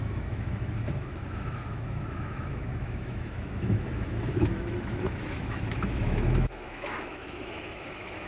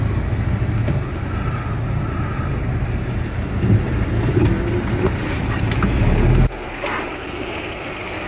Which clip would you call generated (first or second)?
first